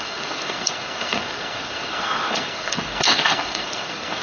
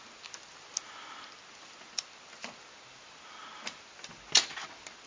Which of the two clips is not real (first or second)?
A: first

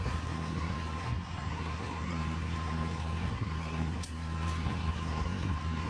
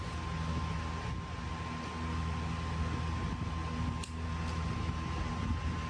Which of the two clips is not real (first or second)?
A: first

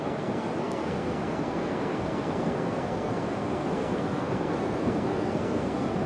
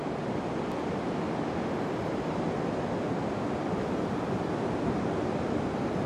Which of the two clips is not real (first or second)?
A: first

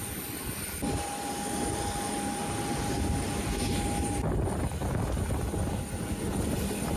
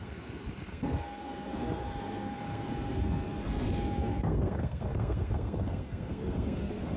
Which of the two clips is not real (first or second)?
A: second